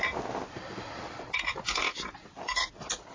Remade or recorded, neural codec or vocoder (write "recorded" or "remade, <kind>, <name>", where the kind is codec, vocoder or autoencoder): recorded